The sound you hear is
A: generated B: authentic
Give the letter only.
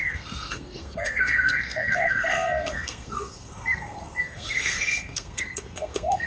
A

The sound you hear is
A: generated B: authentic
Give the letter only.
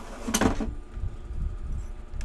B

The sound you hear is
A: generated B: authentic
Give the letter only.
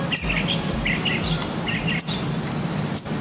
B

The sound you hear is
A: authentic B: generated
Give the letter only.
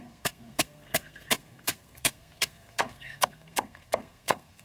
B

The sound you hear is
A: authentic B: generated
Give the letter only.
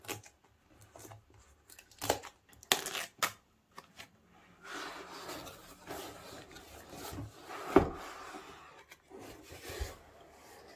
A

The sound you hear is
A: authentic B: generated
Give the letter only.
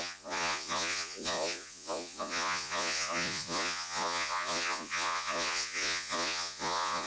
B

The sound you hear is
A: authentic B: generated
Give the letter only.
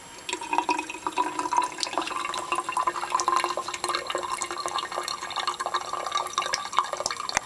A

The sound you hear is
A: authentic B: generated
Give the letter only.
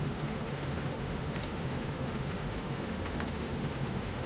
B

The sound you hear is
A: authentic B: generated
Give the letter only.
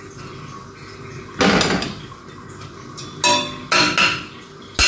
A